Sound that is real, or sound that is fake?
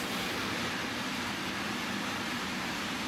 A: real